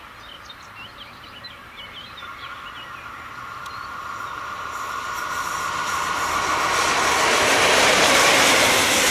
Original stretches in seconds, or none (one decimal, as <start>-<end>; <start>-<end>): 0.0-0.9; 2.7-7.5

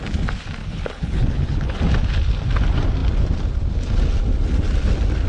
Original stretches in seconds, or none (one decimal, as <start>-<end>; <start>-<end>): 0.0-0.6; 1.8-5.3

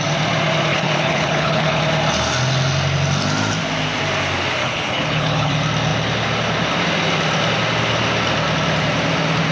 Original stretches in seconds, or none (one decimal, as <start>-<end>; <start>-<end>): 0.0-0.7; 1.8-4.6; 5.5-9.5

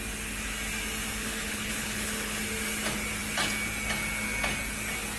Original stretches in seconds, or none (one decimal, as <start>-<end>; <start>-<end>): 0.0-1.2; 2.4-5.2

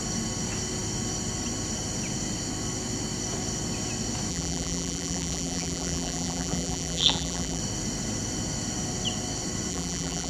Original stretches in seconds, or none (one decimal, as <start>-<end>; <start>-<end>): 0.0-4.3; 7.6-9.7

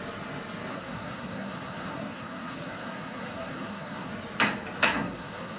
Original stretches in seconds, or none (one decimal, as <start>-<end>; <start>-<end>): 0.0-0.7; 4.1-4.8